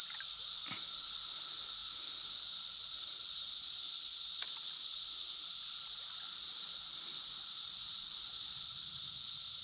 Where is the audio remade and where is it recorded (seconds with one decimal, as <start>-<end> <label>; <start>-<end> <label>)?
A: 0.0-9.6 recorded